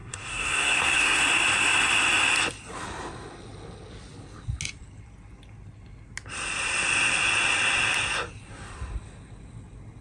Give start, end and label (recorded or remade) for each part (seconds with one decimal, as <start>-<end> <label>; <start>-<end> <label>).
0.0-1.2 remade; 1.2-10.0 recorded